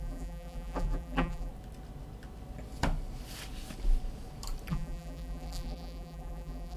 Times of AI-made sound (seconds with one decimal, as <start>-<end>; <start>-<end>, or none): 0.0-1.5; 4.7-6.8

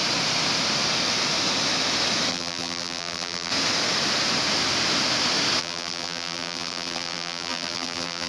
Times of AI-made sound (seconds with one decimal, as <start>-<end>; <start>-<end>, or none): 2.3-3.5; 5.6-8.3

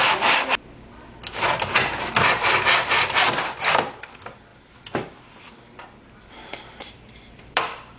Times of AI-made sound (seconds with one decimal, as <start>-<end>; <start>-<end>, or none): 4.5-8.0

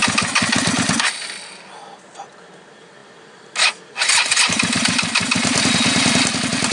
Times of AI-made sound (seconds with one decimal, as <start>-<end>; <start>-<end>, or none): none

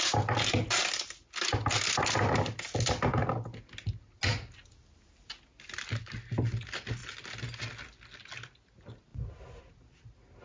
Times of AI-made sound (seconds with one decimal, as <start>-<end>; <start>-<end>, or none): none

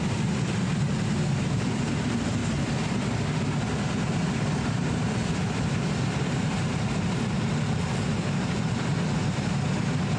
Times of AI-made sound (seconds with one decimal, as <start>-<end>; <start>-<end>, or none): 0.0-2.4; 4.1-7.9; 8.7-10.2

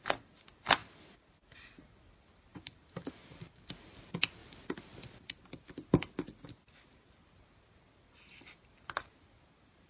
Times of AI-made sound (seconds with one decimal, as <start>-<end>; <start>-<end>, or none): 2.5-3.6